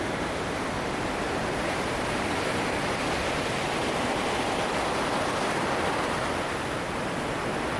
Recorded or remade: recorded